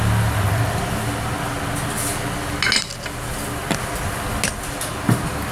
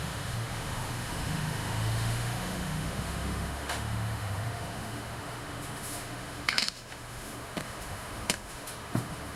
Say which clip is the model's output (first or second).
second